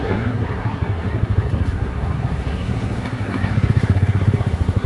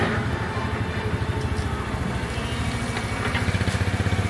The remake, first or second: first